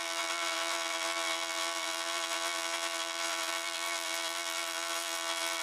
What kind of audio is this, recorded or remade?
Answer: remade